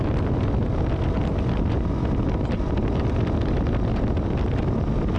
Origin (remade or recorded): recorded